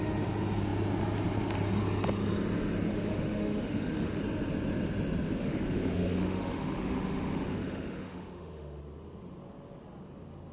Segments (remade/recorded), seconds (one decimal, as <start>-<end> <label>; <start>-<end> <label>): 0.0-2.9 recorded; 2.9-4.2 remade; 4.2-5.4 recorded; 5.4-8.8 remade; 8.8-10.5 recorded